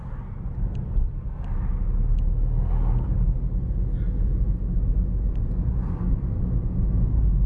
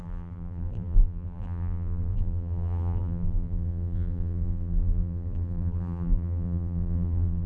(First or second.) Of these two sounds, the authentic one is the first